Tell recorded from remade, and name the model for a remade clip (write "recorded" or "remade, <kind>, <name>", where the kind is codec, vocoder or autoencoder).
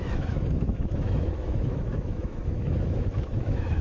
remade, autoencoder, DAC-VAE